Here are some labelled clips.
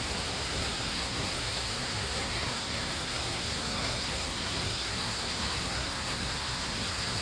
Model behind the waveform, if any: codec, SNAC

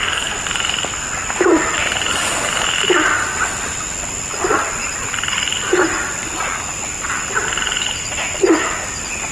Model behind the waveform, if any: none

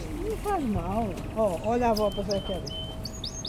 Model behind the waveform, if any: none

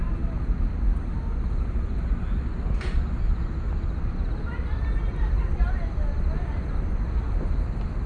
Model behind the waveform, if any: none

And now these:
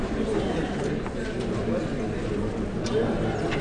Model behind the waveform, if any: none